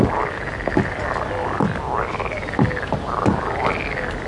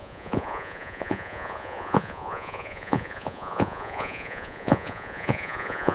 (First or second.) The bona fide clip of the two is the first